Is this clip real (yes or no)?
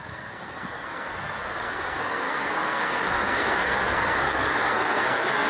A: no